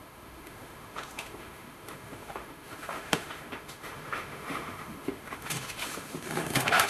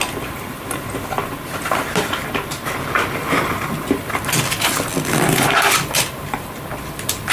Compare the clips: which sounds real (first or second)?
second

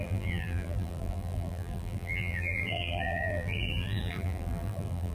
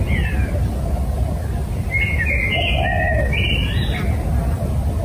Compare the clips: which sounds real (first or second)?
second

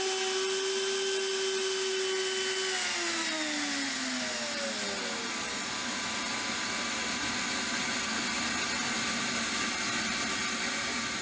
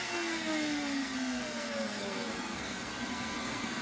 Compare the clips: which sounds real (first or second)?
first